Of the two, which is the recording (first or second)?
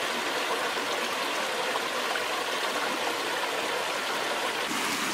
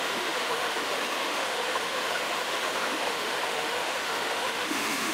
first